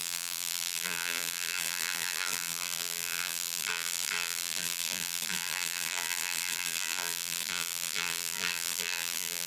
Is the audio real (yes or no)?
no